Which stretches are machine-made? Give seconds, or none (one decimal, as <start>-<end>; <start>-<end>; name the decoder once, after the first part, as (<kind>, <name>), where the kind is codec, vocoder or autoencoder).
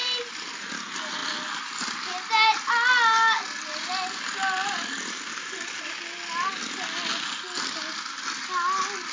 none